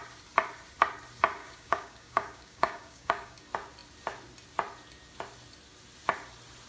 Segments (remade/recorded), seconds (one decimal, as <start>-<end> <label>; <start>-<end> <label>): 0.0-1.4 recorded; 1.4-3.4 remade; 3.4-6.7 recorded